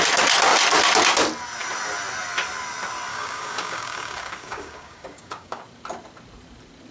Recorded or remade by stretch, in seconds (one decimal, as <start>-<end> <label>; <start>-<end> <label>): 0.0-3.1 recorded; 3.1-5.6 remade; 5.6-6.9 recorded